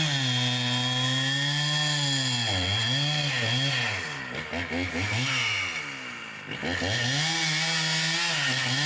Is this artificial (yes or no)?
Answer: no